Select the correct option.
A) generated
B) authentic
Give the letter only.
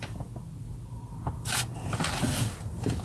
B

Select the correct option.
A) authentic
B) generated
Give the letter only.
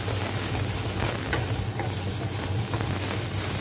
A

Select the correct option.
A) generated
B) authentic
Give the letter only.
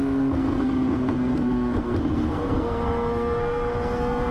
A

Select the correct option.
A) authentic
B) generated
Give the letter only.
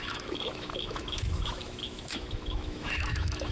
B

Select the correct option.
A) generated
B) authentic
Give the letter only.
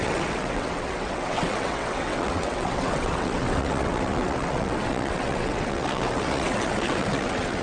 A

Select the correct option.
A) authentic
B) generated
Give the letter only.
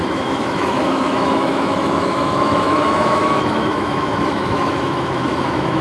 B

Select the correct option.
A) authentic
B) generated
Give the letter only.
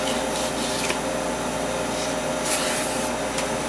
A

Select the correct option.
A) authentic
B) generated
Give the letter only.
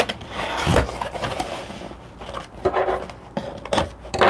A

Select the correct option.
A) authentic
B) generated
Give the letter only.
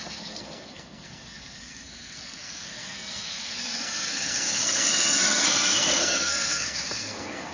B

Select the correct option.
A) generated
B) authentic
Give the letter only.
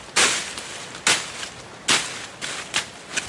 B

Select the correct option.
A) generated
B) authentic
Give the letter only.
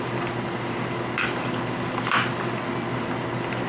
B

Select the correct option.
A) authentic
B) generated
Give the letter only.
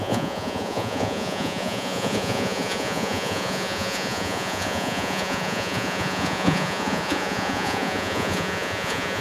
B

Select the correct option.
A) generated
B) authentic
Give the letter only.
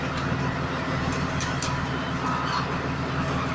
B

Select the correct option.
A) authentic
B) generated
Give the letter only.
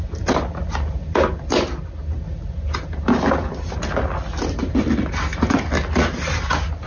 A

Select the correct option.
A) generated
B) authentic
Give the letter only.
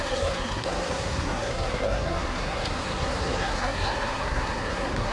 A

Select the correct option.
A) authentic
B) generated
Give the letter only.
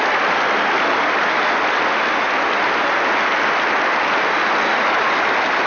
A